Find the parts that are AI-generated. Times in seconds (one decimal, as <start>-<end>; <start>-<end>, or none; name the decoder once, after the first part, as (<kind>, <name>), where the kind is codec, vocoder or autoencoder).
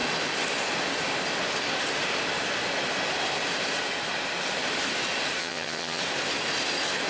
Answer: 5.4-6.0 (vocoder, HiFi-GAN)